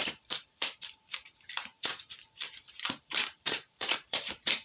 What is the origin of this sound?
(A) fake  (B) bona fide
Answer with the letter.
A